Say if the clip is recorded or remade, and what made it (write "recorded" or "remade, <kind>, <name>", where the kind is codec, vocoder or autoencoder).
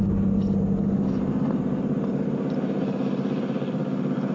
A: recorded